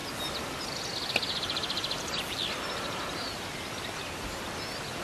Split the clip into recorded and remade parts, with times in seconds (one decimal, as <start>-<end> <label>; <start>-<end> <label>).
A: 0.0-5.0 recorded